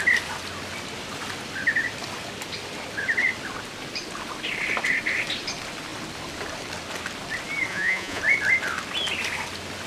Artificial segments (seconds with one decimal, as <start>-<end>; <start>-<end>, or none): 7.7-8.2

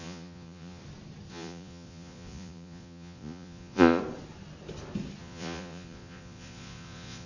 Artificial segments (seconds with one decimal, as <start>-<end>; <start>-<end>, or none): 0.0-0.8; 1.3-4.0; 5.2-7.3

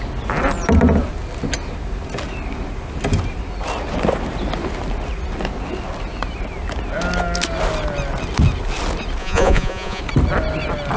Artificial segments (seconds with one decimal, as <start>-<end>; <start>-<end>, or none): 9.2-10.0

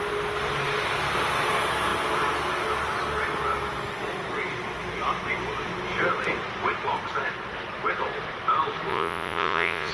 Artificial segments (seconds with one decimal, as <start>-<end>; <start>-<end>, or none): 8.9-9.9

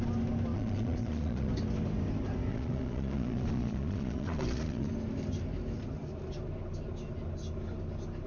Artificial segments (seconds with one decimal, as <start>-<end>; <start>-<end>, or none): 0.5-1.5; 2.5-4.9